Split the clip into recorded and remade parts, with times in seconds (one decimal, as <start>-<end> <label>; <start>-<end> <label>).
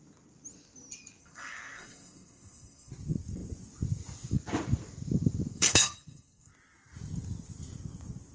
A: 0.0-1.2 recorded; 1.2-2.9 remade; 2.9-5.5 recorded; 5.5-6.5 remade; 6.5-8.3 recorded